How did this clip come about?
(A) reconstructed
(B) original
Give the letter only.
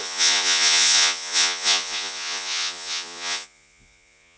A